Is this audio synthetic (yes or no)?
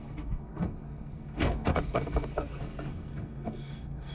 yes